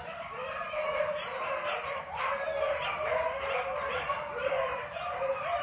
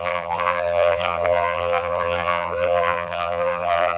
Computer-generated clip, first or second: second